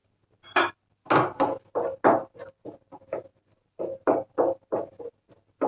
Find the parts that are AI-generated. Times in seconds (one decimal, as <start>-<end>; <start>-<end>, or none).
none